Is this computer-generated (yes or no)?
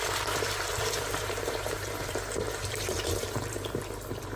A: yes